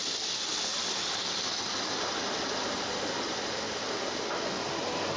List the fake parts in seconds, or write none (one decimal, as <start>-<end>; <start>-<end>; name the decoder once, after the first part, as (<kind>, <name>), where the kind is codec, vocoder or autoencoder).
none